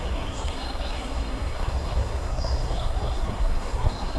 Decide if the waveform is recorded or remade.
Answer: remade